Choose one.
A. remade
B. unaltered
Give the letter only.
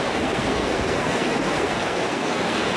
A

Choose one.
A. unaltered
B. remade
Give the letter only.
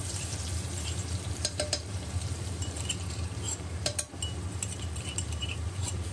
B